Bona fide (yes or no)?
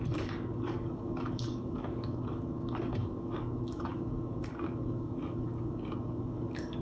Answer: no